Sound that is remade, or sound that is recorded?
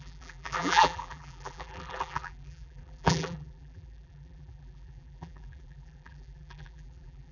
remade